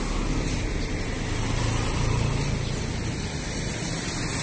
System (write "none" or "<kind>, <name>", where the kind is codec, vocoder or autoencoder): none